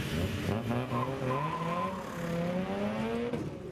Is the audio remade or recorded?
recorded